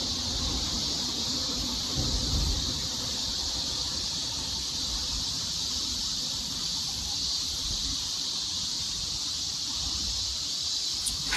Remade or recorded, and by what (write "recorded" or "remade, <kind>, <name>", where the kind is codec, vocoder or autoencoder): remade, vocoder, BigVGAN v2